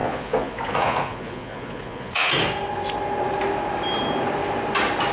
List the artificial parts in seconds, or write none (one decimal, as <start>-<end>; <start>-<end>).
0.0-2.3